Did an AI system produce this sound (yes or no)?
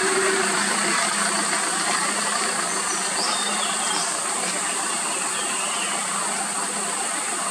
no